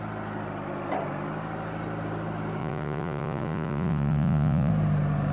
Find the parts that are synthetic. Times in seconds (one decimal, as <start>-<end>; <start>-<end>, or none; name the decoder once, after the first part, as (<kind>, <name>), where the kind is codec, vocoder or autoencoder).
2.6-4.7 (vocoder, Vocos)

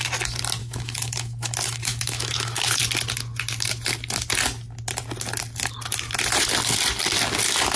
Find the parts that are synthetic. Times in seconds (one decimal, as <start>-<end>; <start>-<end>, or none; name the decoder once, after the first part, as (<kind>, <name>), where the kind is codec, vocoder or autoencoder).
0.6-2.8 (autoencoder, DAC-VAE)